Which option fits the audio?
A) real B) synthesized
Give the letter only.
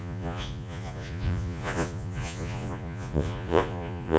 B